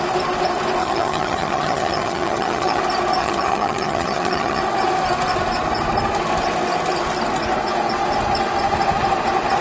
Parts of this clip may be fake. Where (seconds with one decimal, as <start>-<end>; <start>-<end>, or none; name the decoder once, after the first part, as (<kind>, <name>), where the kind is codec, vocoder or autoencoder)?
0.8-2.8 (vocoder, HiFi-GAN); 3.2-4.6